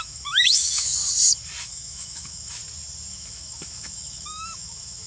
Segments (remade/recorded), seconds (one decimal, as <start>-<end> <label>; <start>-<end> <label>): 0.0-1.0 remade; 1.0-1.6 recorded; 1.6-2.6 remade; 2.6-3.1 recorded; 3.1-5.1 remade